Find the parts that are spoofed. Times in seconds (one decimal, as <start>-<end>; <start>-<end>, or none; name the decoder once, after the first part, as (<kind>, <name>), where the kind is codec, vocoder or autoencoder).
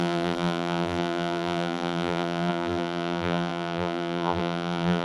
0.0-5.0 (vocoder, BigVGAN v2)